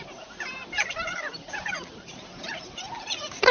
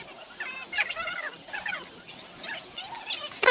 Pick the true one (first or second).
second